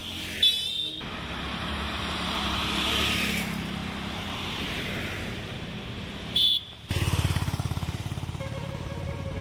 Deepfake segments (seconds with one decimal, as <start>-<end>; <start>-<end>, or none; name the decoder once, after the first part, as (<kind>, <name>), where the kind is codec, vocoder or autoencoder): 1.0-3.8 (vocoder, BigVGAN v2); 4.7-9.4